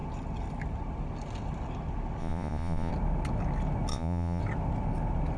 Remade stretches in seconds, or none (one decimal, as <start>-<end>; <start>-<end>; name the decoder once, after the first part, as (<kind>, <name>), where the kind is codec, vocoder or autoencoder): 2.2-2.9 (vocoder, Vocos); 3.9-4.4